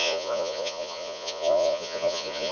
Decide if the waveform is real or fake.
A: fake